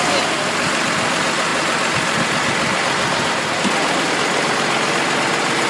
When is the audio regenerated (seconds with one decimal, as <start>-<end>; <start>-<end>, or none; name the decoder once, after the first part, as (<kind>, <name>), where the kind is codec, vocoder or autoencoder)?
none